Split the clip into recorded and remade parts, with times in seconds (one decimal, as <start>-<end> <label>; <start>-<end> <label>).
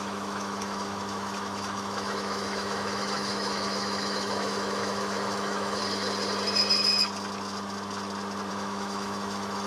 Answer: 0.0-5.8 remade; 5.8-8.5 recorded; 8.5-9.7 remade